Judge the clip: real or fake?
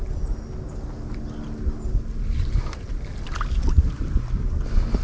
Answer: real